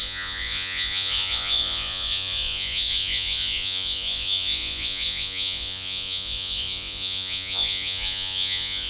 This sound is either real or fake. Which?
fake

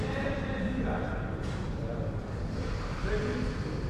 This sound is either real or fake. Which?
fake